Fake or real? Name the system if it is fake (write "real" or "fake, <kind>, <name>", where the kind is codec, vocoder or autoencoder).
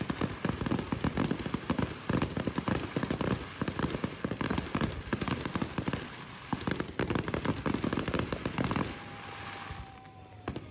fake, vocoder, BigVGAN v2